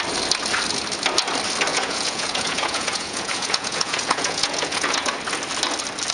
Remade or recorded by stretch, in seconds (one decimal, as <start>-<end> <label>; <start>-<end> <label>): 0.0-1.7 recorded; 1.7-5.1 remade; 5.1-6.1 recorded